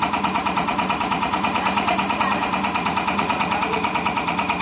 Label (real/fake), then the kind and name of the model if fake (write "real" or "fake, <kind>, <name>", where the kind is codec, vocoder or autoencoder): fake, vocoder, Vocos